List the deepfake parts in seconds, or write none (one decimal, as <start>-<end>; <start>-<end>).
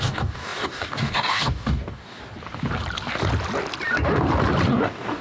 0.0-2.2; 4.8-5.2